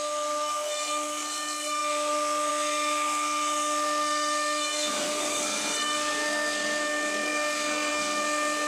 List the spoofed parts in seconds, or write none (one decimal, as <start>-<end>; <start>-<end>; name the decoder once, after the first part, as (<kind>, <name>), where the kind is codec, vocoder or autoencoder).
0.0-8.7 (codec, SNAC)